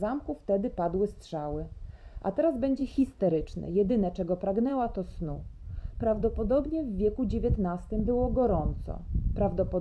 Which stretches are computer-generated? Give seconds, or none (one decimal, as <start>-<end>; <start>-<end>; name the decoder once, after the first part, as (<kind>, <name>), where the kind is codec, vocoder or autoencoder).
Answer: 2.8-3.9 (vocoder, WaveNeXt); 4.7-6.6